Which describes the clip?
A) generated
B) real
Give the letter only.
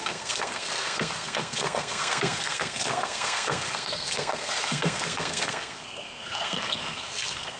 A